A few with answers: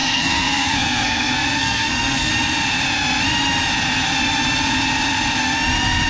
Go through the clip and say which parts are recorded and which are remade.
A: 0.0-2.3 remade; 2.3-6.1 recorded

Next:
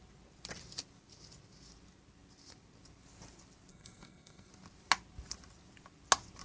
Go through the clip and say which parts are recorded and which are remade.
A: 0.0-3.7 recorded; 3.7-4.5 remade; 4.5-6.4 recorded

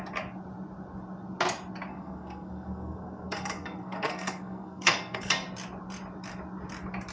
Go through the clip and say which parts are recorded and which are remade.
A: 0.0-1.9 recorded; 1.9-5.3 remade; 5.3-7.1 recorded

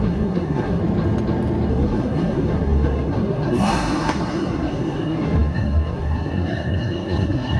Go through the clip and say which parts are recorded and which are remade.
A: 0.0-0.8 remade; 0.8-1.7 recorded; 1.7-7.6 remade

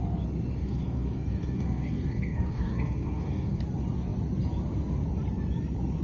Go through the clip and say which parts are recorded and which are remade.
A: 0.0-0.6 recorded; 0.6-3.6 remade; 3.6-6.0 recorded

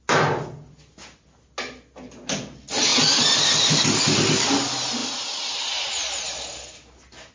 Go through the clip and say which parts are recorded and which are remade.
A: 0.0-7.3 recorded

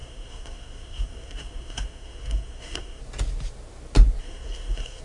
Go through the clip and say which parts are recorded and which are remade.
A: 0.0-3.0 remade; 3.0-4.2 recorded; 4.2-5.0 remade

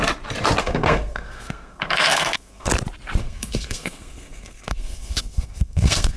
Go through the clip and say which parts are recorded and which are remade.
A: 0.0-0.6 recorded; 0.6-2.7 remade; 2.7-3.2 recorded; 3.2-6.2 remade